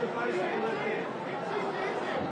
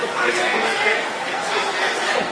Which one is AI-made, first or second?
second